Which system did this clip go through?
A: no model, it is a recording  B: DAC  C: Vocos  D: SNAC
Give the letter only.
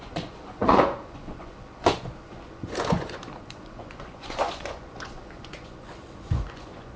C